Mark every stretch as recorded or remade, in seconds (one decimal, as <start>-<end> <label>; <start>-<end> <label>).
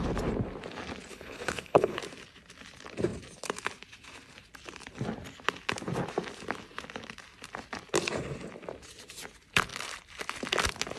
0.0-1.1 recorded; 1.1-2.0 remade; 2.0-11.0 recorded